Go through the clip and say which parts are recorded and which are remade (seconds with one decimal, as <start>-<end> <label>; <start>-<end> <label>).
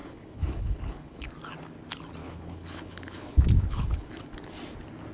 0.0-1.3 remade; 1.3-2.2 recorded; 2.2-4.1 remade; 4.1-5.1 recorded